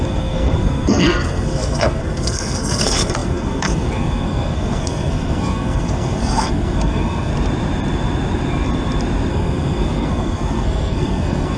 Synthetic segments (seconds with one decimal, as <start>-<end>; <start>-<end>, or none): 0.0-7.3; 9.3-11.6